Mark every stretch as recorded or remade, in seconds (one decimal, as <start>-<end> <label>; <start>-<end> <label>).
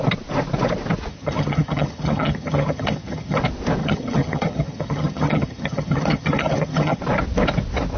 0.0-1.1 recorded; 1.1-3.4 remade; 3.4-3.8 recorded; 3.8-7.0 remade; 7.0-8.0 recorded